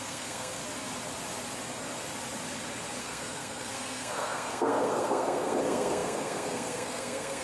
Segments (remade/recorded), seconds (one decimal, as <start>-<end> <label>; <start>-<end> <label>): 0.0-0.6 remade; 0.6-3.0 recorded; 3.0-7.4 remade